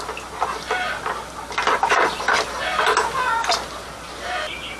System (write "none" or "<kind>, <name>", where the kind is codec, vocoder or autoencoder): none